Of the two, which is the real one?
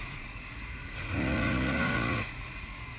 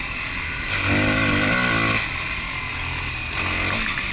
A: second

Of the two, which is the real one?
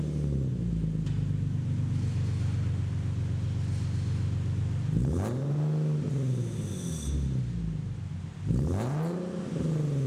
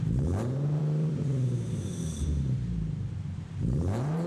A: first